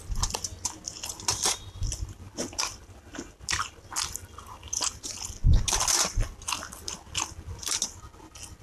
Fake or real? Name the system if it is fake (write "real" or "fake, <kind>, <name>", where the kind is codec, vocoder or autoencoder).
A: real